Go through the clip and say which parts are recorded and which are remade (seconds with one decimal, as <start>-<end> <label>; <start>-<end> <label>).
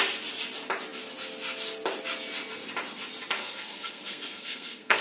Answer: 0.0-3.4 recorded; 3.4-5.0 remade